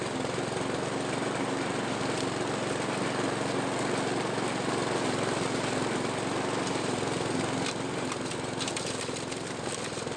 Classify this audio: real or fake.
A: real